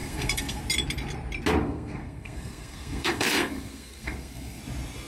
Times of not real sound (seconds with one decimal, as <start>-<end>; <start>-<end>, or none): 0.0-0.6; 1.6-4.6